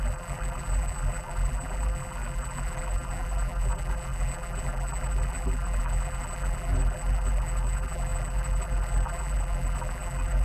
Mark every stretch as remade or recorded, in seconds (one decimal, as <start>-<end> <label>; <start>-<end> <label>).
0.0-10.4 remade